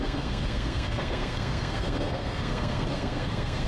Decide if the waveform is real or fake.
fake